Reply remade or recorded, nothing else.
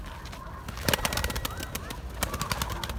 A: recorded